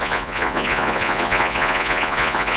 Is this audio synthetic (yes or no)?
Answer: yes